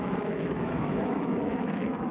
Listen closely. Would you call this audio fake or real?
fake